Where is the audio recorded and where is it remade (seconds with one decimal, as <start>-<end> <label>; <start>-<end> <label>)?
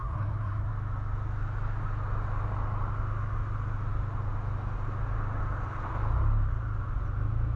0.0-0.7 remade; 0.7-7.6 recorded